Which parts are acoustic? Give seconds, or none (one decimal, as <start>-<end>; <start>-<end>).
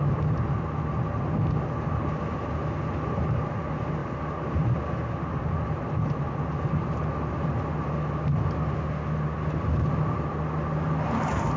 0.0-11.6